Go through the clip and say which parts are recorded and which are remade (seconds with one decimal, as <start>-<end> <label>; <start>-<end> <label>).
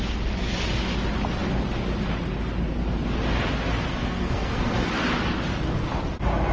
0.0-3.9 recorded; 3.9-4.9 remade; 4.9-6.5 recorded